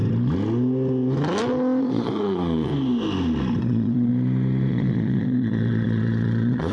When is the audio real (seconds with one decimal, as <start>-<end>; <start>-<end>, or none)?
0.0-1.8; 2.7-3.6; 4.1-4.7